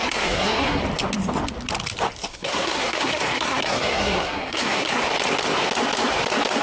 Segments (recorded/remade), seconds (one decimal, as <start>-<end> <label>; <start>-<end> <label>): 0.0-0.8 remade; 0.8-2.3 recorded; 2.3-5.0 remade; 5.0-6.6 recorded